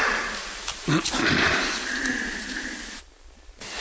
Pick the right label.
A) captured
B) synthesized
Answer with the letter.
A